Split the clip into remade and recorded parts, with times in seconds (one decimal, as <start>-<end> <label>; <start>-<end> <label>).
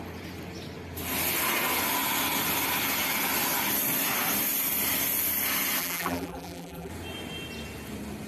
0.0-5.8 recorded; 5.8-6.9 remade; 6.9-8.3 recorded